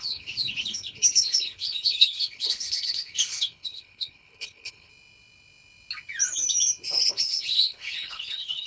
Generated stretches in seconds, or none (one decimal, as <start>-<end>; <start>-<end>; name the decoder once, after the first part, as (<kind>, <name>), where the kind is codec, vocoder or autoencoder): 0.0-4.9 (codec, HILCodec); 7.1-8.7

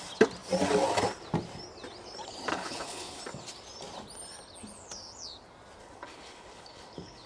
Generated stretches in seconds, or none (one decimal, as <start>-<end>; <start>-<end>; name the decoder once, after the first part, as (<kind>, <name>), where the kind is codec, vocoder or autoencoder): 2.5-3.2 (codec, HILCodec); 5.8-7.3

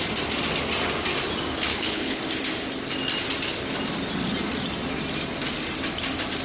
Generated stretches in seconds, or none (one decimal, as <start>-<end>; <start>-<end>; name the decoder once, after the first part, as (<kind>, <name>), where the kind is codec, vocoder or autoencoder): 1.7-2.2 (codec, HILCodec)

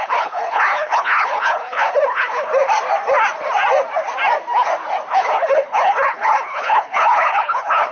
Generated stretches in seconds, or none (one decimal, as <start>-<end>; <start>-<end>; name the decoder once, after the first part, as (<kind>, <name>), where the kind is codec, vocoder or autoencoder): 0.0-2.5 (codec, HILCodec); 5.1-7.9

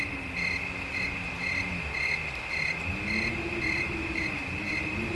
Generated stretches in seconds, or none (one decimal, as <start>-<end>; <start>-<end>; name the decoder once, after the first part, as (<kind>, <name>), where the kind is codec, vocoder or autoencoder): none

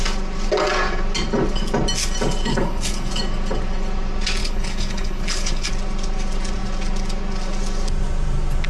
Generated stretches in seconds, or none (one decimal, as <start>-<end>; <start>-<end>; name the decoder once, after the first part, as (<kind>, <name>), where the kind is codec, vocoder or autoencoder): 2.5-3.1 (codec, HILCodec); 4.4-5.7